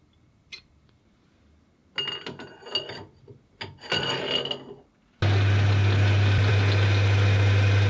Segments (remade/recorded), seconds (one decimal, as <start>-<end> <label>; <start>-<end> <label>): 0.0-7.9 recorded